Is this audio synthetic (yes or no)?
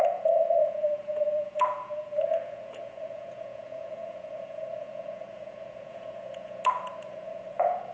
yes